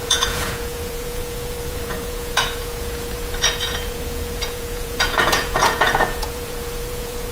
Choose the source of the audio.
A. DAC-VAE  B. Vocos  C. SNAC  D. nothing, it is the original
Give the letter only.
B